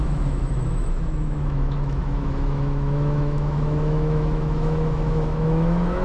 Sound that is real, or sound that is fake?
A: fake